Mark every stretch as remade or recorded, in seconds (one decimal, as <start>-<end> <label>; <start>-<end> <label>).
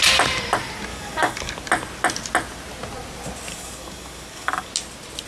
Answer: 0.0-0.9 recorded; 0.9-1.5 remade; 1.5-3.5 recorded; 3.5-4.7 remade; 4.7-5.3 recorded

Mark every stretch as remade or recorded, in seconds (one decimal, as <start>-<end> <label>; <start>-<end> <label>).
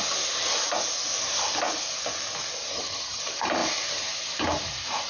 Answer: 0.0-2.7 recorded; 2.7-3.2 remade; 3.2-5.1 recorded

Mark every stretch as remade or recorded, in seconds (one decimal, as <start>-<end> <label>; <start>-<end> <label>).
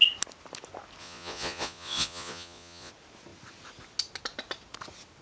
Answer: 0.0-1.0 recorded; 1.0-2.9 remade; 2.9-5.2 recorded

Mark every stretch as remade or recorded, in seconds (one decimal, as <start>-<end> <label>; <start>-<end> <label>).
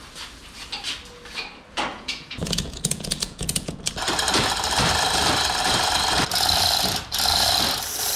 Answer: 0.0-1.9 recorded; 1.9-3.8 remade; 3.8-8.2 recorded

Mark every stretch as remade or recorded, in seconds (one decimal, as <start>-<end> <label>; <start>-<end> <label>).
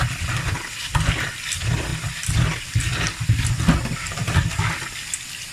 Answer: 0.0-5.5 recorded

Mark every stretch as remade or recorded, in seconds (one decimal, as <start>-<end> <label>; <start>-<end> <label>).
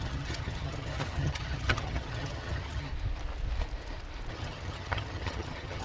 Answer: 0.0-2.9 remade; 2.9-4.3 recorded; 4.3-5.8 remade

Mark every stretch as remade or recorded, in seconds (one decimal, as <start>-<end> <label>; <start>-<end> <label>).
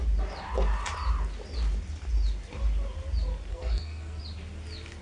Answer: 0.0-3.5 recorded; 3.5-4.2 remade; 4.2-5.0 recorded